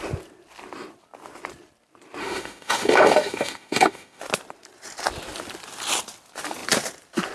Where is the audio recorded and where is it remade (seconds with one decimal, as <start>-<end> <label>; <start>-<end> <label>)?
0.0-2.2 recorded; 2.2-4.2 remade; 4.2-7.3 recorded